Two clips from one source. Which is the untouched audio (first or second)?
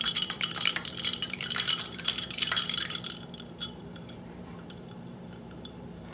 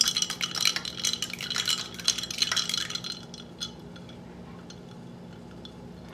second